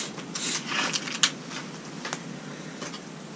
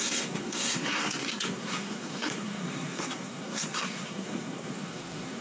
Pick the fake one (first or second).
second